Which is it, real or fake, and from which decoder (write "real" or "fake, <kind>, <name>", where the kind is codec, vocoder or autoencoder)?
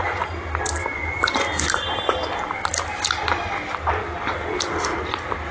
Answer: real